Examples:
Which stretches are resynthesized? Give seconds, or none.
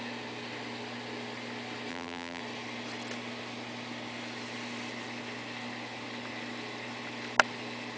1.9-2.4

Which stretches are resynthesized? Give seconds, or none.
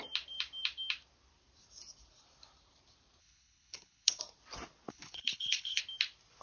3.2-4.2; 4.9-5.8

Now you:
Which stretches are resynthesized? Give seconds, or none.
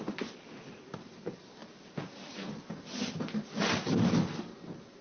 none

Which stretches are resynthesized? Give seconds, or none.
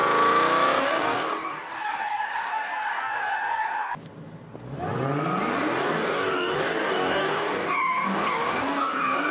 0.8-3.9; 5.8-9.3